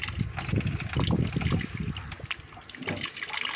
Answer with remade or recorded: recorded